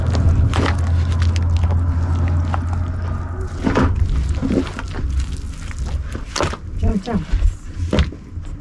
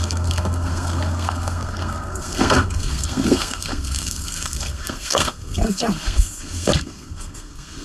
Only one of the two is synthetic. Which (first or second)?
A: second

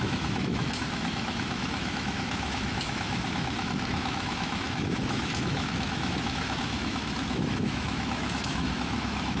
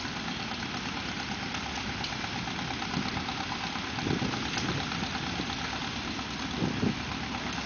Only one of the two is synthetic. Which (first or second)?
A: first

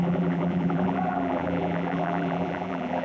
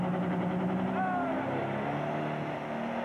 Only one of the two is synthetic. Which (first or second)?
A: first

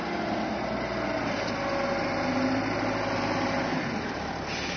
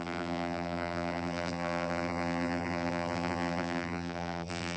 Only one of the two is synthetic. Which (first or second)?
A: second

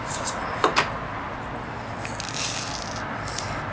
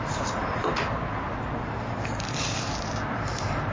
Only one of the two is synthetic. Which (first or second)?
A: second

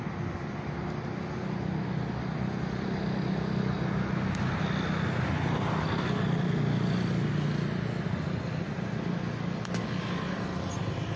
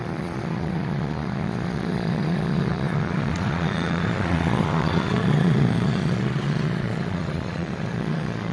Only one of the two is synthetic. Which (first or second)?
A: second